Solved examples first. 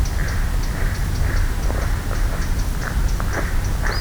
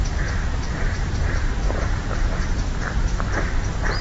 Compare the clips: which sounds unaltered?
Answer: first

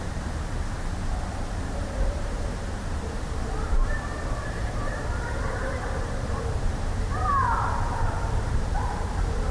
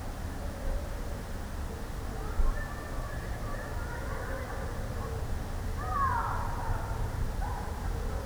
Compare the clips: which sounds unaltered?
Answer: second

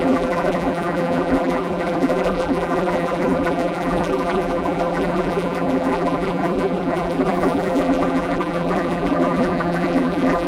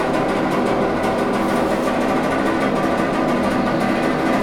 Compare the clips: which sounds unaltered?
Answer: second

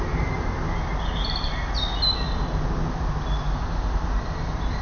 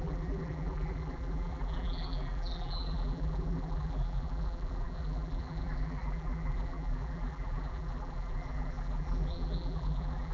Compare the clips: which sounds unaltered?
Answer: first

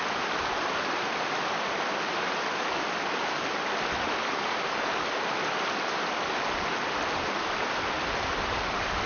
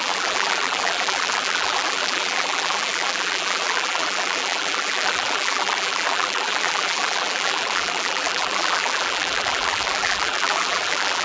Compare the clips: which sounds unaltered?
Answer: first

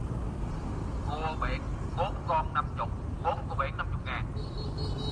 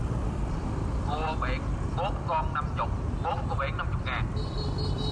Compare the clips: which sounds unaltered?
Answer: first